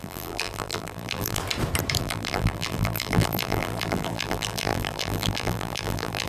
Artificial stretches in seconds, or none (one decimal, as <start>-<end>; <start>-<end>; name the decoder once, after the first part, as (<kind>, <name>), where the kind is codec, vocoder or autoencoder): 0.0-1.4 (vocoder, BigVGAN v2); 2.0-6.3